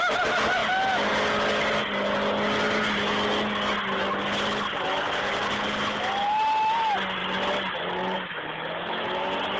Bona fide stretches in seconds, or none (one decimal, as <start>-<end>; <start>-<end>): 0.0-8.3; 9.2-9.6